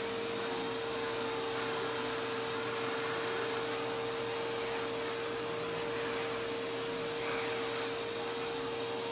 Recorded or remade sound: recorded